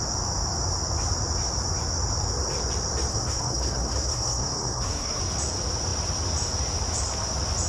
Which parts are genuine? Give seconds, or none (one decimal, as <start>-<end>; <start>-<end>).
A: 0.0-3.1; 5.2-7.7